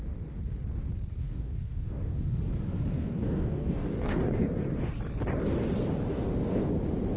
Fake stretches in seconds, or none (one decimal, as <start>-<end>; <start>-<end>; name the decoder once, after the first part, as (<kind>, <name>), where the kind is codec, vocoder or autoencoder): 1.2-2.4 (codec, DAC); 3.0-4.6; 6.1-6.7